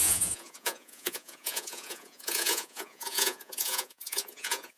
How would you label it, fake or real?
fake